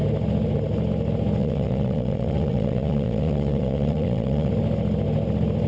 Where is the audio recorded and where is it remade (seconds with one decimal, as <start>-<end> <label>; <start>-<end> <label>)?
0.0-1.4 recorded; 1.4-4.5 remade; 4.5-5.7 recorded